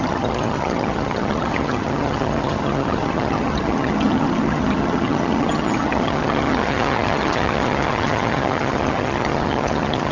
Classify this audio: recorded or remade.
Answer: remade